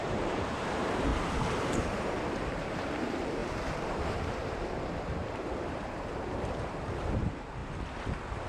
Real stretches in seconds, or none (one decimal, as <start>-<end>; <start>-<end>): 1.1-1.8; 7.6-8.5